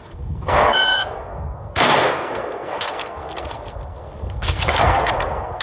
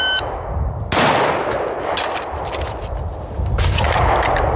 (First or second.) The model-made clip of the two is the first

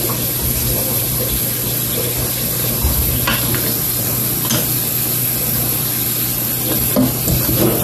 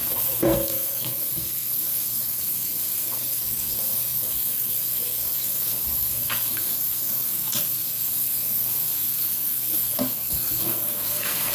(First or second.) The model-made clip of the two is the second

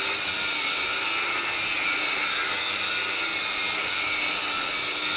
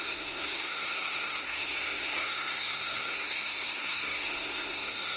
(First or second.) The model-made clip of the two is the second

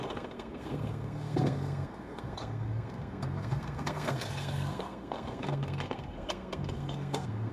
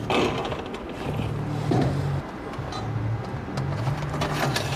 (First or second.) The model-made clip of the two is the first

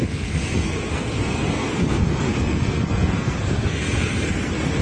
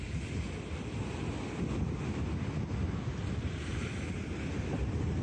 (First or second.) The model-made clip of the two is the first